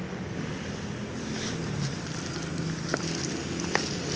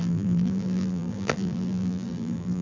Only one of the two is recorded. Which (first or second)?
first